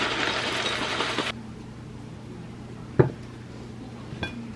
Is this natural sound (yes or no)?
yes